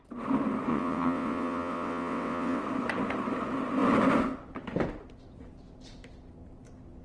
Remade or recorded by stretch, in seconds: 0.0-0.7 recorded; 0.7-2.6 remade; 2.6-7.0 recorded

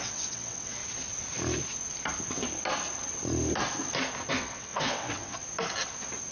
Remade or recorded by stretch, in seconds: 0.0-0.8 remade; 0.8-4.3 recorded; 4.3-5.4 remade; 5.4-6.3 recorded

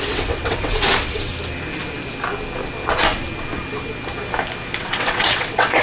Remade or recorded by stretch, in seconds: 0.0-1.3 remade; 1.3-4.8 recorded; 4.8-5.8 remade

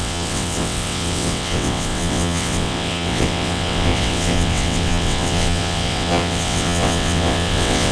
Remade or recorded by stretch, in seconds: 0.0-7.9 remade